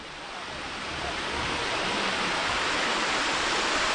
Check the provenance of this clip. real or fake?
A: fake